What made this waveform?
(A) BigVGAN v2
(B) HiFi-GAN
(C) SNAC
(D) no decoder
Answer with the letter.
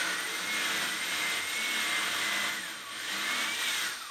D